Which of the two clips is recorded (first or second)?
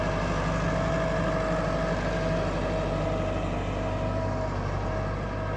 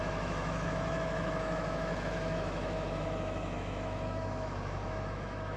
first